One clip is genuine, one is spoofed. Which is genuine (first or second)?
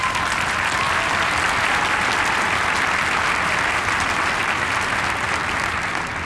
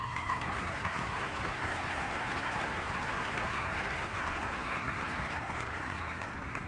first